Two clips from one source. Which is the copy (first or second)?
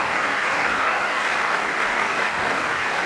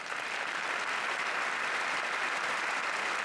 first